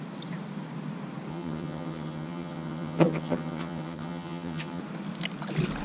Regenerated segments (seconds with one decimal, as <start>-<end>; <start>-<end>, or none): 1.3-4.8